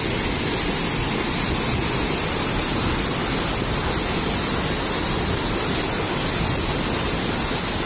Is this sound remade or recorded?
recorded